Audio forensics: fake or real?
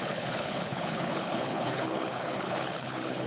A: fake